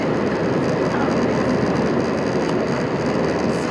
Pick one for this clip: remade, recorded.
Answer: recorded